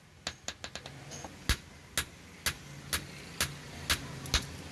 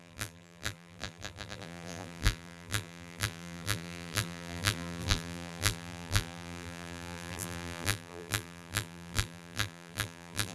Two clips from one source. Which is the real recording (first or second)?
first